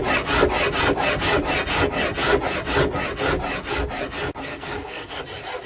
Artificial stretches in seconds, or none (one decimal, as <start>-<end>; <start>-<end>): 4.4-5.2